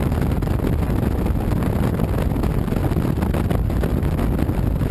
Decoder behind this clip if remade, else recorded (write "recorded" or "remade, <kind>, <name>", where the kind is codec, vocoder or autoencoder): recorded